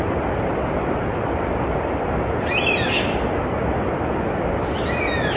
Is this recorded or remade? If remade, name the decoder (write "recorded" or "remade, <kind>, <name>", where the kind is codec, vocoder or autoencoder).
recorded